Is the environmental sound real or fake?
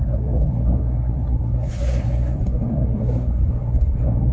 fake